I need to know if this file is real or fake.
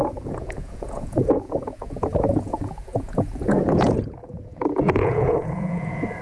fake